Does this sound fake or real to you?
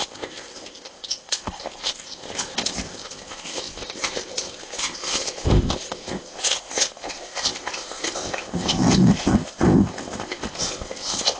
fake